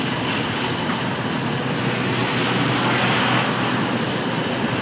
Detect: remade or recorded recorded